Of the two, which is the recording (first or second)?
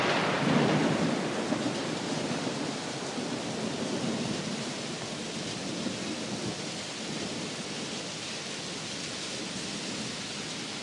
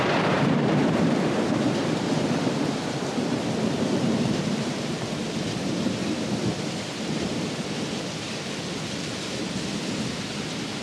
first